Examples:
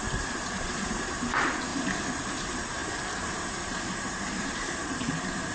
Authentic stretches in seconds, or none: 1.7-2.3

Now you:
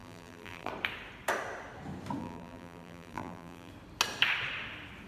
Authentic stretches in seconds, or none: 0.7-2.2; 3.7-5.1

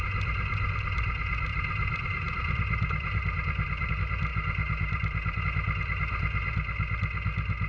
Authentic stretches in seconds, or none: 0.0-1.5; 3.9-4.3; 5.4-7.7

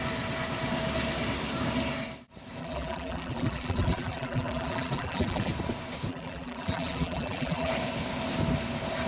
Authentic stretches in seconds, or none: 0.0-2.6; 5.5-6.1; 7.7-9.1